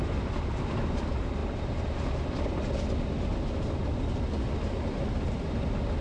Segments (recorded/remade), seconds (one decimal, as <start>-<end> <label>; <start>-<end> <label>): 0.0-6.0 recorded

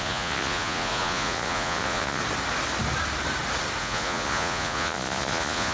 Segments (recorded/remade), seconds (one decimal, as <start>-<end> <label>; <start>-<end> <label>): 0.0-2.2 remade; 2.2-3.8 recorded; 3.8-5.7 remade